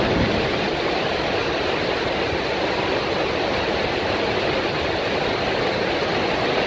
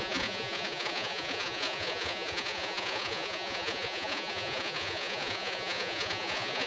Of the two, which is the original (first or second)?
first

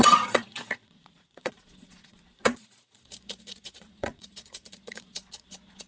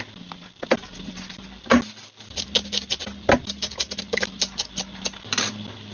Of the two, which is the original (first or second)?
second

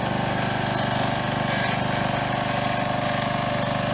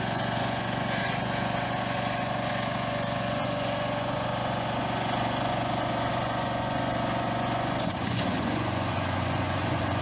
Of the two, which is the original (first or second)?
first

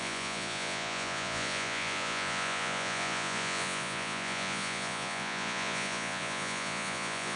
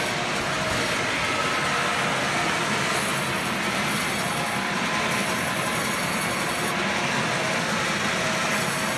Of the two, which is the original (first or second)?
second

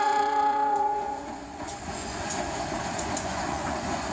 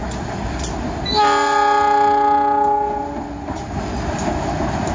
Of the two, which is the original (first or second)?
second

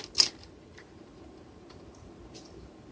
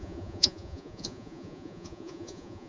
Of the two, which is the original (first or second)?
first